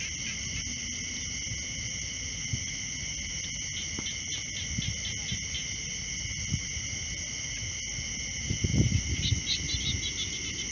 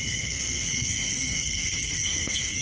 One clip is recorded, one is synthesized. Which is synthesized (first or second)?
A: second